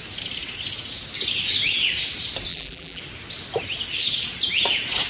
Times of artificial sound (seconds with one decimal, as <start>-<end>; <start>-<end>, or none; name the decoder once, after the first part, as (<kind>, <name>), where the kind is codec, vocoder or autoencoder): 2.5-3.0 (vocoder, BigVGAN v2)